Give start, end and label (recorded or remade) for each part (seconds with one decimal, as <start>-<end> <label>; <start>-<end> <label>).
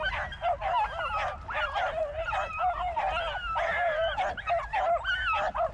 0.0-5.7 recorded